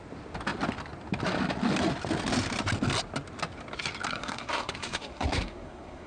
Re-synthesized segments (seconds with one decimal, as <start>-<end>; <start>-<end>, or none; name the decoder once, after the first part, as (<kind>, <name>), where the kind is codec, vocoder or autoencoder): 4.1-6.1 (codec, SNAC)